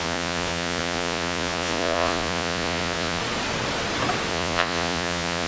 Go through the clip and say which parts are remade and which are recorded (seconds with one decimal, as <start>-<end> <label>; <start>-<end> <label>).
0.0-3.2 remade; 3.2-4.3 recorded; 4.3-5.5 remade